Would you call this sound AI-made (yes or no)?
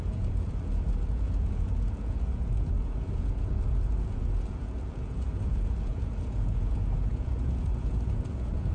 yes